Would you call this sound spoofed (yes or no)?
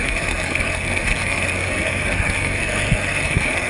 yes